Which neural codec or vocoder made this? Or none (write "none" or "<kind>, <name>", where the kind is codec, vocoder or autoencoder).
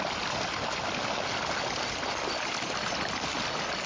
none